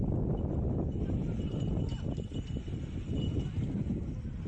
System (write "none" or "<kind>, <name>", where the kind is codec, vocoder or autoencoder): none